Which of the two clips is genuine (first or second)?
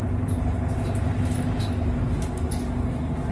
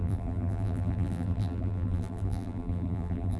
first